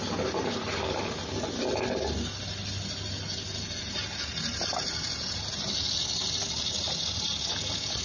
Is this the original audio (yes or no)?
yes